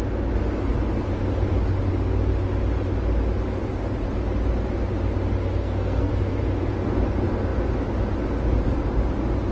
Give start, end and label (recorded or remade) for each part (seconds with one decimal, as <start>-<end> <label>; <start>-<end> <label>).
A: 0.0-5.6 recorded; 5.6-6.2 remade; 6.2-9.5 recorded